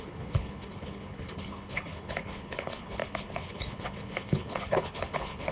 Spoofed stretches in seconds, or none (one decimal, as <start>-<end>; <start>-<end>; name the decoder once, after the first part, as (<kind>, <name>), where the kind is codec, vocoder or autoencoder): 0.0-5.5 (codec, HILCodec)